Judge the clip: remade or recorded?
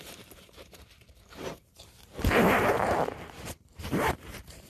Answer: remade